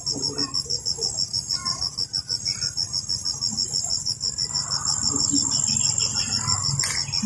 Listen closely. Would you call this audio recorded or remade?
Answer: recorded